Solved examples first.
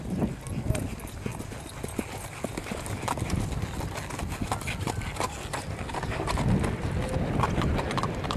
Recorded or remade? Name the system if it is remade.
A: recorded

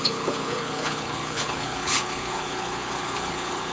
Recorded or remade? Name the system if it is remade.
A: remade, codec, HILCodec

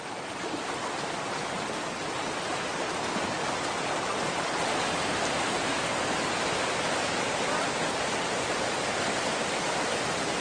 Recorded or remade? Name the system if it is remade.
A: recorded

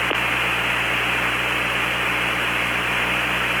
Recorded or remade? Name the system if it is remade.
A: recorded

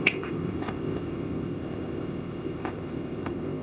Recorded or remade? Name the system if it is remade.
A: remade, codec, ZipCodec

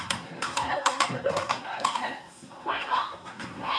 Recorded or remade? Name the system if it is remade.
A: remade, codec, SNAC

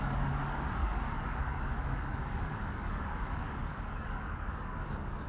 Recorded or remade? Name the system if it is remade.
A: remade, codec, DAC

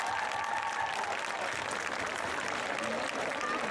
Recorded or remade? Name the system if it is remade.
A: recorded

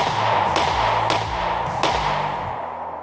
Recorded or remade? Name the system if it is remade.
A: recorded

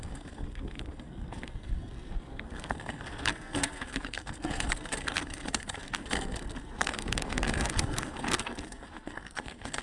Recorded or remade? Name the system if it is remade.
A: remade, codec, SNAC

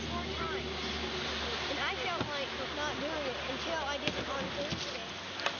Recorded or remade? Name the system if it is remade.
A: recorded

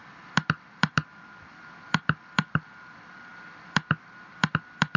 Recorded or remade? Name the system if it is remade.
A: remade, vocoder, BigVGAN v2